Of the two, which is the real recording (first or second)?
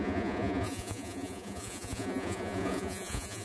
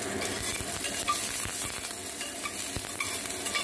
second